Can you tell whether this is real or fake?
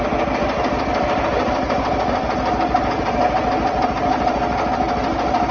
real